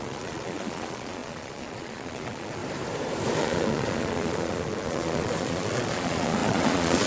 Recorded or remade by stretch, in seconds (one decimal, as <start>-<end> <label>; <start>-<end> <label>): 0.0-2.6 remade; 2.6-3.4 recorded; 3.4-7.1 remade